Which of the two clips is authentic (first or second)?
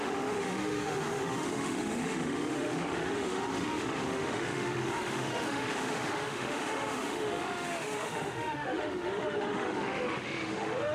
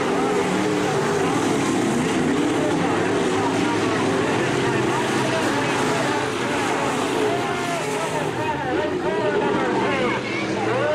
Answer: second